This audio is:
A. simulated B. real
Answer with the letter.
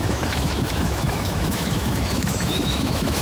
A